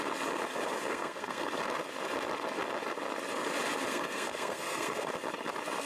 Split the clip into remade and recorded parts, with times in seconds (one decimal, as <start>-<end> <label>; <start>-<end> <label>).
0.0-0.9 recorded; 0.9-1.5 remade; 1.5-3.9 recorded; 3.9-5.1 remade; 5.1-5.9 recorded